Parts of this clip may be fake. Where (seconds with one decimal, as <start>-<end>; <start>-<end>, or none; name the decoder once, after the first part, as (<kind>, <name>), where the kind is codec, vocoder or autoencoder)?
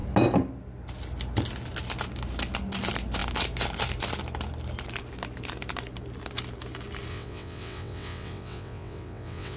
7.1-9.6 (vocoder, WaveNeXt)